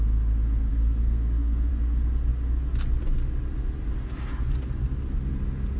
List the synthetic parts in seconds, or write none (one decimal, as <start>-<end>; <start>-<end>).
0.7-1.7